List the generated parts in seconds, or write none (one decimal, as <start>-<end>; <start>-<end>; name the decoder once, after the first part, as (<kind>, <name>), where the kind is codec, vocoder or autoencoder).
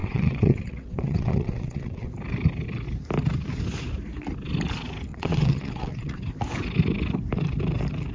0.0-2.1 (vocoder, WaveNeXt); 5.1-6.2